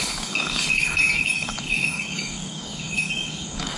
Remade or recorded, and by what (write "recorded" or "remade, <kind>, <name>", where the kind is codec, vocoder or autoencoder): remade, codec, DAC